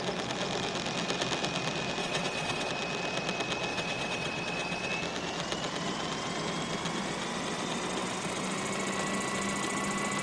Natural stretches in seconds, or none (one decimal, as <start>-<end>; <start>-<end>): 0.0-2.0; 2.7-3.7; 4.9-10.2